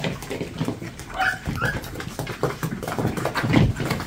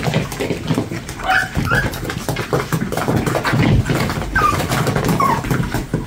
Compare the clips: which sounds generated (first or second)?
first